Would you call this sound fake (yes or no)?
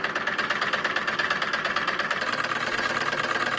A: no